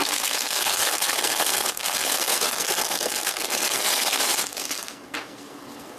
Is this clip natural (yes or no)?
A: no